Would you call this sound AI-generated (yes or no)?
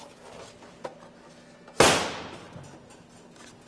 no